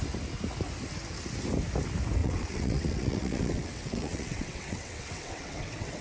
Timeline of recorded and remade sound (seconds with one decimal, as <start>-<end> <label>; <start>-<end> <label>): 0.0-2.2 recorded; 2.2-6.0 remade